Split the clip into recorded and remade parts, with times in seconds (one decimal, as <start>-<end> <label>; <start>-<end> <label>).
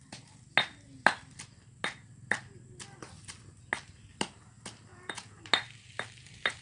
0.0-4.9 recorded; 4.9-5.4 remade; 5.4-6.6 recorded